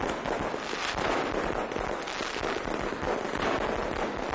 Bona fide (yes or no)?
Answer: yes